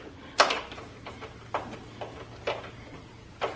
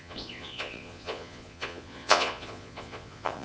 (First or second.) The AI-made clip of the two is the second